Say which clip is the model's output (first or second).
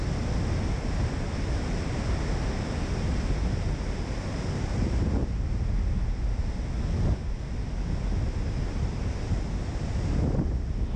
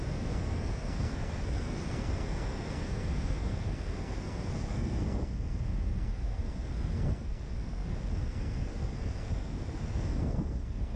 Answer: second